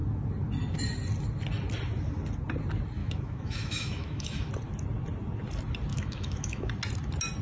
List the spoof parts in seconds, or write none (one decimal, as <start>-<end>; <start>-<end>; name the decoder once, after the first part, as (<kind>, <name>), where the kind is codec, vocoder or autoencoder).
3.0-4.5 (autoencoder, DAC-VAE); 5.9-6.7